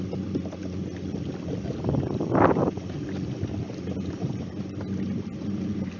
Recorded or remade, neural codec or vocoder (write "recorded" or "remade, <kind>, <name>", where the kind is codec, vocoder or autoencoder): recorded